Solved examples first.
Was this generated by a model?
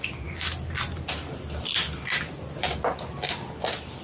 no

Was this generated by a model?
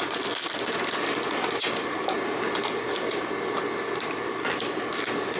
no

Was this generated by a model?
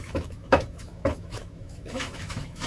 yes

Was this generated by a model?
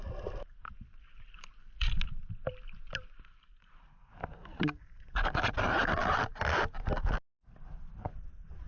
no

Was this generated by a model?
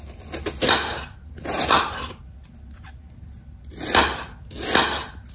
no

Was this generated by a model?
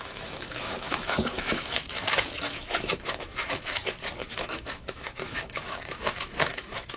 yes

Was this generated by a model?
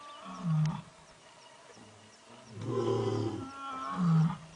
no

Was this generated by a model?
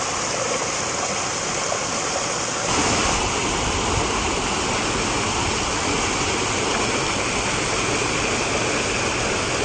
no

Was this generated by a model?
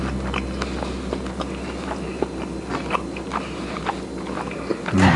no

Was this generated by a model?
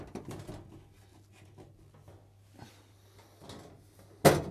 no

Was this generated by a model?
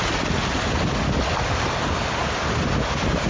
no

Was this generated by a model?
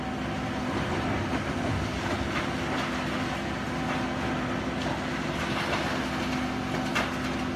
no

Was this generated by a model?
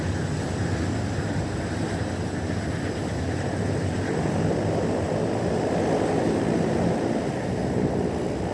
no